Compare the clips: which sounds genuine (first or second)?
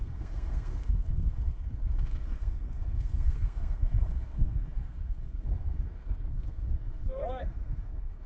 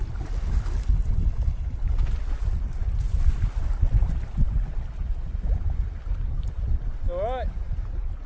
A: second